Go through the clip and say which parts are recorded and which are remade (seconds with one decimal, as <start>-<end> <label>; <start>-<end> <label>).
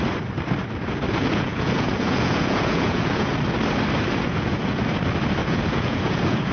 0.0-1.1 recorded; 1.1-3.3 remade; 3.3-4.2 recorded; 4.2-4.8 remade; 4.8-5.4 recorded; 5.4-6.5 remade